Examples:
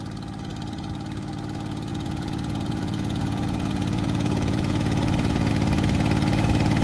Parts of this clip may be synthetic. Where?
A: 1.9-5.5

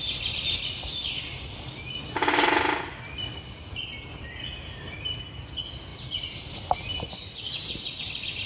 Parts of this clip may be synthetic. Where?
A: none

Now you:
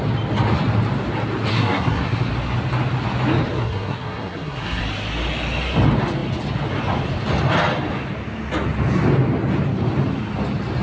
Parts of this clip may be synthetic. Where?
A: 1.5-2.3; 3.5-4.8